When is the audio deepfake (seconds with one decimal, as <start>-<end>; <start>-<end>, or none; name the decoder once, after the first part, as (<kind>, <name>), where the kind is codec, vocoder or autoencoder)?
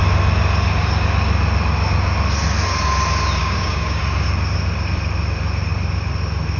3.4-4.0 (codec, DAC)